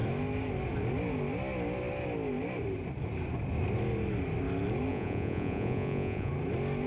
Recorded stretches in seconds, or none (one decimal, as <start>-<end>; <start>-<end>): 0.0-4.9; 6.3-6.9